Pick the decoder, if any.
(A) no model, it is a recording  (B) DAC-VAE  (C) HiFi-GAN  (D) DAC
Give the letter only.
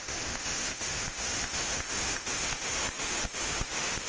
B